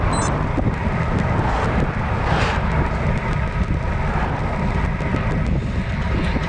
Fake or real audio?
real